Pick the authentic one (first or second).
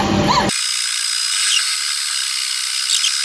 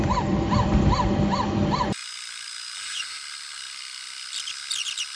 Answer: first